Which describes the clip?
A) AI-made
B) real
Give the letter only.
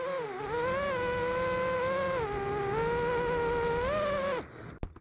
B